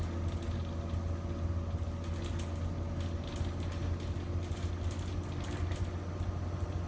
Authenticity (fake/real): real